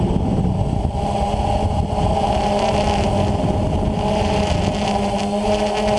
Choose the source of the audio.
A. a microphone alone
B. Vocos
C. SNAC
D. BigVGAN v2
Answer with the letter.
A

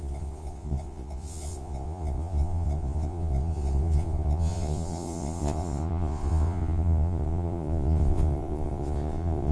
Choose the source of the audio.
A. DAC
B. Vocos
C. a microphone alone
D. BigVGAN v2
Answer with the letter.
B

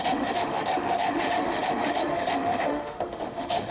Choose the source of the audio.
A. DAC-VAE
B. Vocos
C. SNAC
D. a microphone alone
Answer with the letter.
A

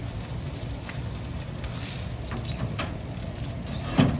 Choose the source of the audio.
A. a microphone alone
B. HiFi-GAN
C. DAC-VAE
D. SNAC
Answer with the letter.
A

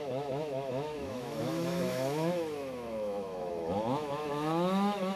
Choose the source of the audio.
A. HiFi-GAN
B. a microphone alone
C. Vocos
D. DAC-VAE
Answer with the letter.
D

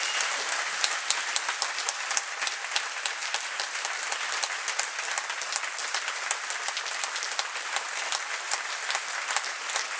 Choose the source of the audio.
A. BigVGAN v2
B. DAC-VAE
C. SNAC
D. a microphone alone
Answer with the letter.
D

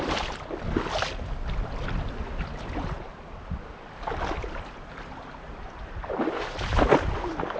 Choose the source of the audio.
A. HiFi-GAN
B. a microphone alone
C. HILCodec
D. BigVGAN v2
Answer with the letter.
B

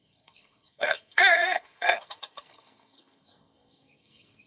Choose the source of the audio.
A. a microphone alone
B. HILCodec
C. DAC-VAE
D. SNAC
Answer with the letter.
D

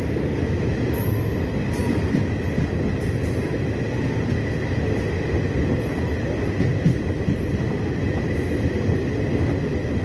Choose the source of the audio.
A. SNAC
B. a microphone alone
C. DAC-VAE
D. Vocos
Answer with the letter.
B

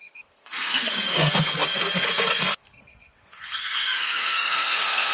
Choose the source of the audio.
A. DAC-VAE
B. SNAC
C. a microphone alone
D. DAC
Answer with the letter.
B